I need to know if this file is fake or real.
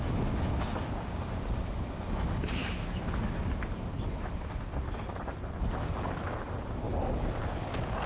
real